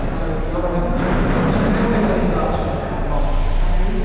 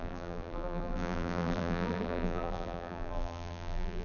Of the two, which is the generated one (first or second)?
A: second